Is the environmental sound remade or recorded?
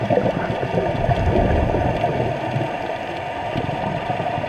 recorded